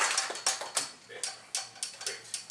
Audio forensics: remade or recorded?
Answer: recorded